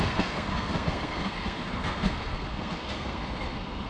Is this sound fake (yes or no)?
yes